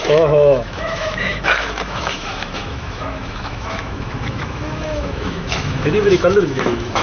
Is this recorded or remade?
remade